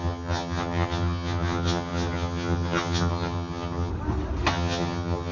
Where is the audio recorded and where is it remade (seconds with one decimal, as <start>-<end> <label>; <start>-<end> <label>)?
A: 0.0-3.9 remade; 3.9-4.5 recorded; 4.5-5.3 remade

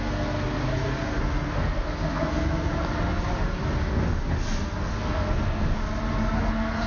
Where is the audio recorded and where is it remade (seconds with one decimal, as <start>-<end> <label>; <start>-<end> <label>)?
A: 0.0-0.7 remade; 0.7-1.2 recorded; 1.2-2.7 remade; 2.7-4.8 recorded; 4.8-5.8 remade; 5.8-6.4 recorded; 6.4-6.9 remade

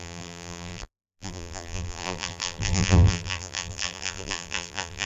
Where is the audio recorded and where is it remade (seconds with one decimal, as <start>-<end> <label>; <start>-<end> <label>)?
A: 0.0-5.1 remade

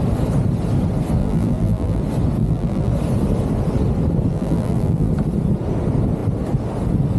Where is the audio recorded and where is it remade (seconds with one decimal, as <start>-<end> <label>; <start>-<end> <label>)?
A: 0.0-1.2 recorded; 1.2-2.0 remade; 2.0-2.4 recorded; 2.4-2.9 remade; 2.9-4.3 recorded; 4.3-5.1 remade; 5.1-7.2 recorded